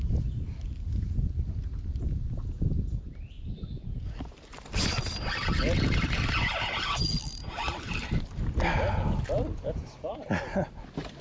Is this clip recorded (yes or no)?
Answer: yes